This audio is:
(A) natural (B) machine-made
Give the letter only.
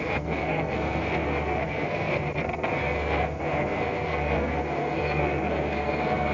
B